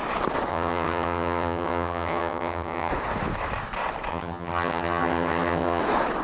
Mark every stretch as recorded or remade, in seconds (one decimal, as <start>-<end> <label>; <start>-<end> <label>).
0.0-0.5 recorded; 0.5-2.9 remade; 2.9-4.1 recorded; 4.1-5.8 remade; 5.8-6.2 recorded